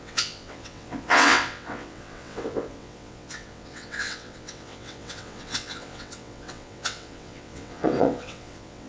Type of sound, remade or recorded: remade